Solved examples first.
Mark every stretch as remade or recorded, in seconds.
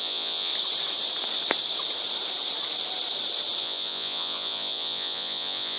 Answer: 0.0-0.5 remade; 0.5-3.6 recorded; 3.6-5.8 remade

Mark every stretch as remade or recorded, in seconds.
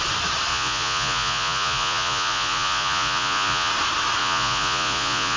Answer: 0.0-0.5 recorded; 0.5-3.7 remade; 3.7-4.2 recorded; 4.2-5.4 remade